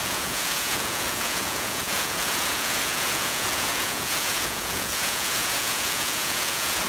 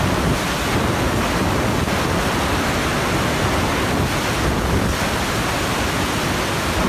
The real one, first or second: second